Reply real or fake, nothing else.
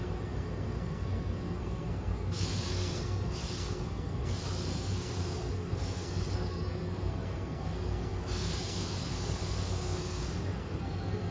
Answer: fake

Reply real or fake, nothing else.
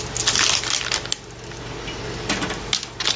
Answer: real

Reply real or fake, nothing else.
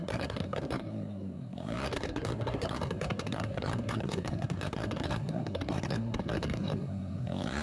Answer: fake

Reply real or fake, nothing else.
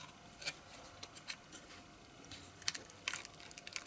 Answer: real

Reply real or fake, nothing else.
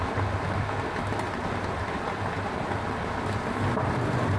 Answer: real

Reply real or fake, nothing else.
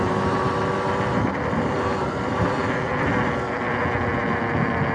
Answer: real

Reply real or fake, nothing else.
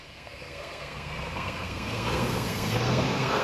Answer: fake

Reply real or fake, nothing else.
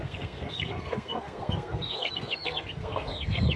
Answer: fake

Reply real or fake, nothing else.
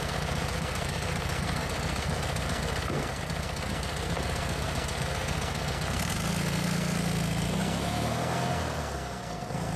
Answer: fake